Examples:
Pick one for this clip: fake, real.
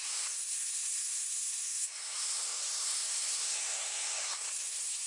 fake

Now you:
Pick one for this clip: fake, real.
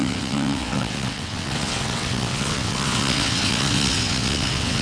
fake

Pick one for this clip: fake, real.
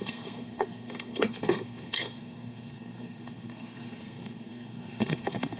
fake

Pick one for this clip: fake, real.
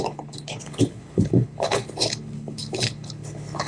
fake